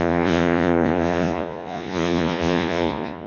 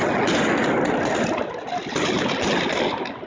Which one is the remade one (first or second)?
first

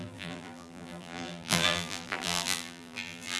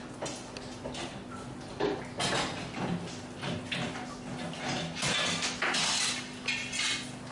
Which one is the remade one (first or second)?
first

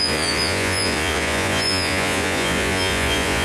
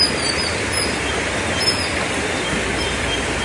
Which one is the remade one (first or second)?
first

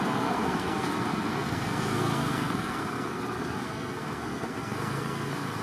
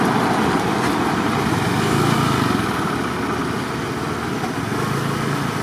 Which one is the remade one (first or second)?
first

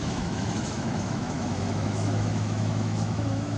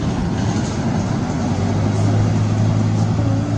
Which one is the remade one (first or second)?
first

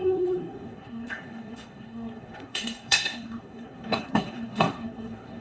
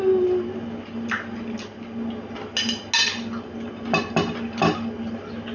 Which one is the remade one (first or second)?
first